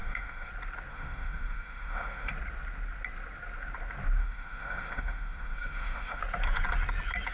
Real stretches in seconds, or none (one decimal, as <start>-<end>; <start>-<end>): 0.5-0.9; 2.3-4.2; 6.2-7.3